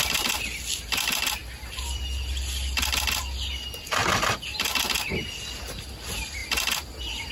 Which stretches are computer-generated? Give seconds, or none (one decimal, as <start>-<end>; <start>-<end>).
none